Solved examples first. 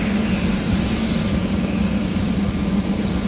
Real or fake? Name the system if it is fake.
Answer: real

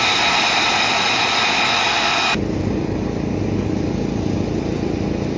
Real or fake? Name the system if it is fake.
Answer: real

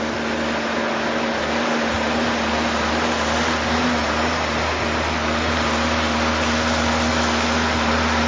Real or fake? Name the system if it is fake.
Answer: real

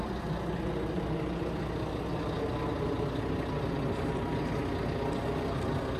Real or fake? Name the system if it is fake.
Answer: real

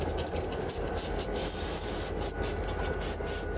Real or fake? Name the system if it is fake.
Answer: real